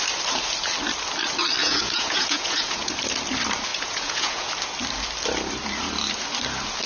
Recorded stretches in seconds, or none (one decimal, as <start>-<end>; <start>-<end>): 0.0-1.6; 2.9-3.7; 4.5-6.9

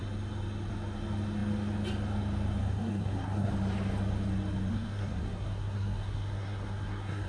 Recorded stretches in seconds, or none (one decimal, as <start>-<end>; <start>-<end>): 0.0-2.6; 3.5-4.7

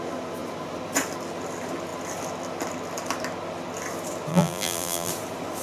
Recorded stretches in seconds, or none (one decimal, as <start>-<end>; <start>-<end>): 0.0-4.3; 5.1-5.6

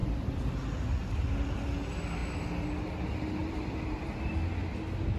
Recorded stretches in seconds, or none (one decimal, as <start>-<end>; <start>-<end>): 0.6-3.4; 4.3-5.2

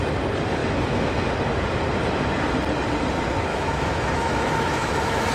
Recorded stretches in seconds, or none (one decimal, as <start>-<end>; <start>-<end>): 0.0-0.6; 1.3-3.5

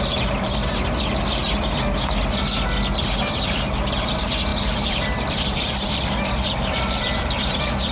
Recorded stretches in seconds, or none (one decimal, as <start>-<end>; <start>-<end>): 0.6-3.0

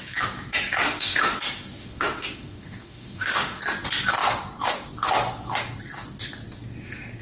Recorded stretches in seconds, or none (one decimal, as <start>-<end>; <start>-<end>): 0.0-0.8; 1.4-1.8; 3.6-7.2

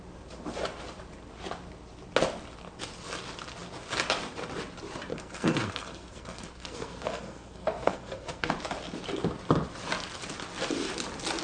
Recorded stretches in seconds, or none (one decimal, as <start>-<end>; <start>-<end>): 0.0-5.1; 8.5-11.4